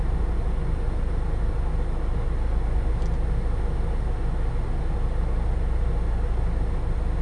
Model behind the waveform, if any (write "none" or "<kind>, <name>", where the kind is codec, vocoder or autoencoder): none